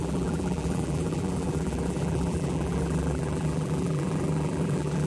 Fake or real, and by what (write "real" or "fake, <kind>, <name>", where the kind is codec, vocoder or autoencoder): fake, vocoder, BigVGAN v2